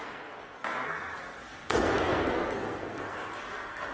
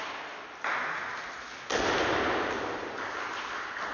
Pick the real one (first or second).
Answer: second